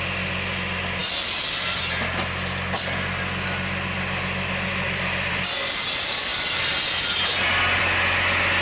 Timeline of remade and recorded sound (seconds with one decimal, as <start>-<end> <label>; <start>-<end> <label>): 0.0-1.0 recorded; 1.0-1.8 remade; 1.8-8.6 recorded